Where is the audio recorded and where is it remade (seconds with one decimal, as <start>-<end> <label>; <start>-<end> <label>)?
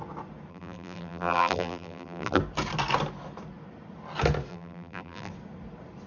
0.0-0.5 recorded; 0.5-2.4 remade; 2.4-4.5 recorded; 4.5-5.3 remade; 5.3-6.1 recorded